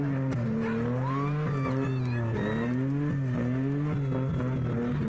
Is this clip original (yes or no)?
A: yes